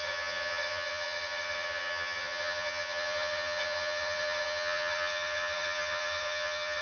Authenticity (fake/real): fake